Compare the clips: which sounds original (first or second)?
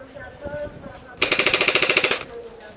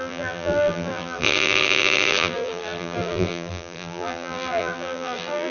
first